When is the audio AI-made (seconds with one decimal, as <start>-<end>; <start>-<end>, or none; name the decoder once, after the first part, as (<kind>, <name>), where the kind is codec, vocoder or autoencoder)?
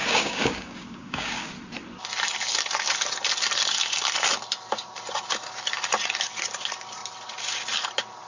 0.0-1.5 (codec, DAC)